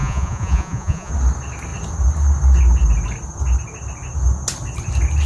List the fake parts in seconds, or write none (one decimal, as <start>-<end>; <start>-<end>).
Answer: 0.0-1.1